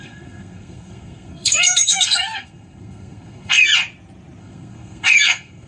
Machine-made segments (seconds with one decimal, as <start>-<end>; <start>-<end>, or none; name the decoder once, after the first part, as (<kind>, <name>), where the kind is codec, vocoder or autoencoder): 0.0-3.7 (codec, SNAC); 4.4-5.7